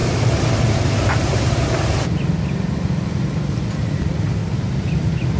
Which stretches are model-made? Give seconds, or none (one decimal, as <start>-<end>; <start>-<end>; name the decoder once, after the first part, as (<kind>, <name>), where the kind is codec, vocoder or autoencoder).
0.0-2.3 (vocoder, BigVGAN v2); 4.4-5.0